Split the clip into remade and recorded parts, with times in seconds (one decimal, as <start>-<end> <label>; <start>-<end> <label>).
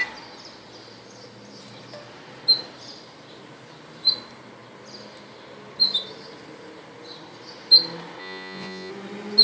0.0-8.2 recorded; 8.2-8.9 remade; 8.9-9.4 recorded